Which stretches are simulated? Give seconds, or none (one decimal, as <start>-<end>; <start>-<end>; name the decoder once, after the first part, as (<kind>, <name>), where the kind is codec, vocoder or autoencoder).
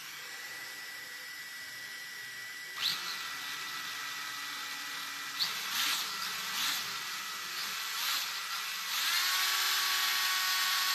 0.0-2.9 (vocoder, BigVGAN v2); 7.5-8.4; 10.5-10.9